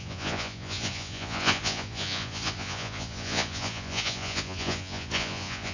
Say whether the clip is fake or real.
fake